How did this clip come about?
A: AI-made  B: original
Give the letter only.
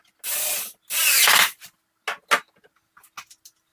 B